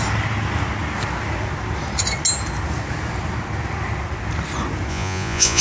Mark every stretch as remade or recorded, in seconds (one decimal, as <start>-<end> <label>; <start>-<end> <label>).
0.0-4.9 recorded; 4.9-5.6 remade